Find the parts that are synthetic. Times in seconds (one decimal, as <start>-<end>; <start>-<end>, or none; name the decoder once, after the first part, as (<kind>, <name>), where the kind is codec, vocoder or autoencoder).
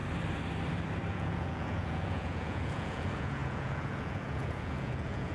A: 1.1-5.3 (vocoder, Vocos)